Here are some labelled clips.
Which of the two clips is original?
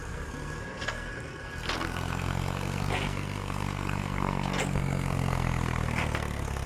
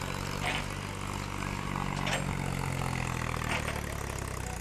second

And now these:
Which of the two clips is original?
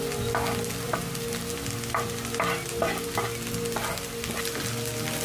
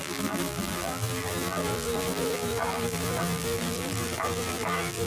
first